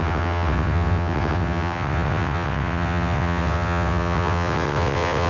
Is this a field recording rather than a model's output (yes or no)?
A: no